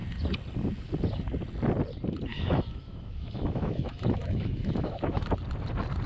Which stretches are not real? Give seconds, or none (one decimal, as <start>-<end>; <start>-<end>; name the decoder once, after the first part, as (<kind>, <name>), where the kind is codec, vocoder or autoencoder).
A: 2.3-5.3 (autoencoder, DAC-VAE)